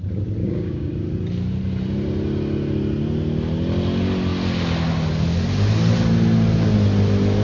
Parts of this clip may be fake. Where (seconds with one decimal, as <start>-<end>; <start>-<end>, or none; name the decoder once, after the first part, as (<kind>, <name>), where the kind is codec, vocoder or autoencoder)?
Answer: 0.4-0.9 (codec, DAC)